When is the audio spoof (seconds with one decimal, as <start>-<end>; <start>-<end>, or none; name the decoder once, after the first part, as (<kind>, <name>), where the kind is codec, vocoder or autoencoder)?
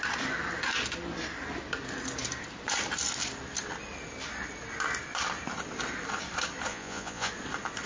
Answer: 6.7-7.3 (vocoder, Vocos)